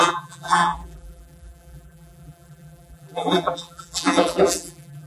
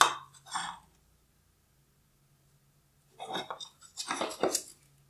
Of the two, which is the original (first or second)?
second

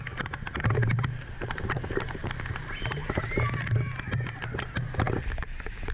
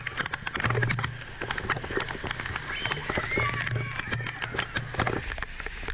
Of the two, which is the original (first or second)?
second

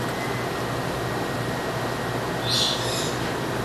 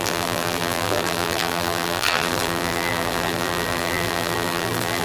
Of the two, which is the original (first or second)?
first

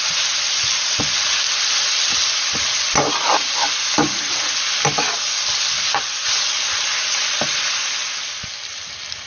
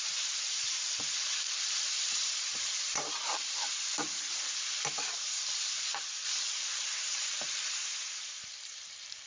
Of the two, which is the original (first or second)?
first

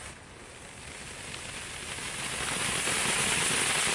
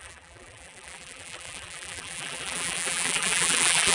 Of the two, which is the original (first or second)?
first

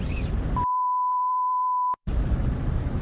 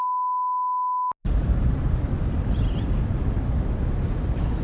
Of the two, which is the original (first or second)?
second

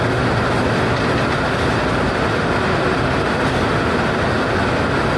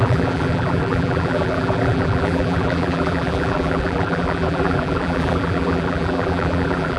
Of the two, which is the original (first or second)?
first